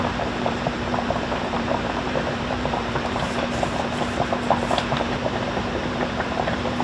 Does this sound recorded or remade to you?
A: remade